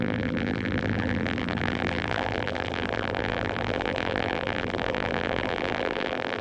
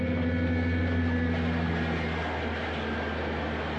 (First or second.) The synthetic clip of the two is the first